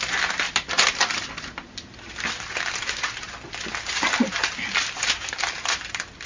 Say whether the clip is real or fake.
real